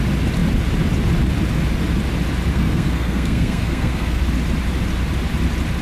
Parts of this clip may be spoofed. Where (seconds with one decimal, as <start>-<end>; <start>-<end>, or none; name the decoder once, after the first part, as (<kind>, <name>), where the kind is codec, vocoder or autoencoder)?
2.5-4.2 (codec, SNAC)